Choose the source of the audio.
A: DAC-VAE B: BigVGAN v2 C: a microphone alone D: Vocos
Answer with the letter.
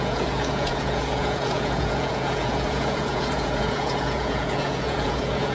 D